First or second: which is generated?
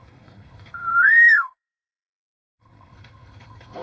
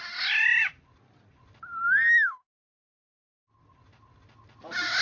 first